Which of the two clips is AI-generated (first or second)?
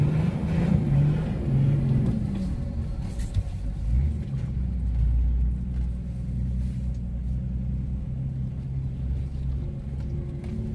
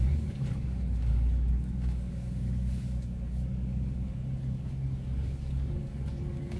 second